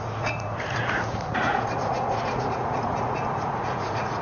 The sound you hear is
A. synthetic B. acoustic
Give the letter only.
A